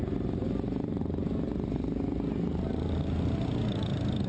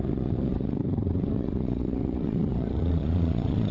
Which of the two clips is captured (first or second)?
first